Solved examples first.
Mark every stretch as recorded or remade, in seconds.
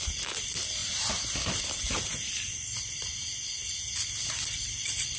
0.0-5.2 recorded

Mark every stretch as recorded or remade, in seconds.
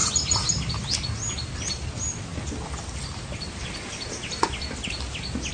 0.0-5.5 recorded